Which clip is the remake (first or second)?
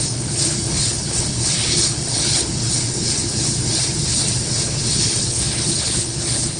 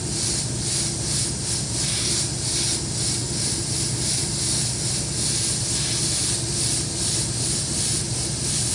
first